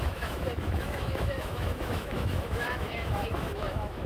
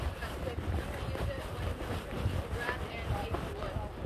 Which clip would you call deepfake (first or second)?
first